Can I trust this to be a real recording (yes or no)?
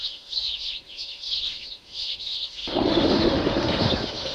no